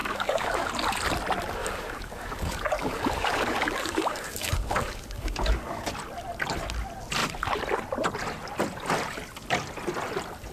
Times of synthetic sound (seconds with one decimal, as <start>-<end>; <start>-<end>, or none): 0.0-0.7; 1.6-5.9